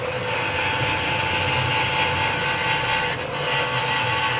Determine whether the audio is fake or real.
real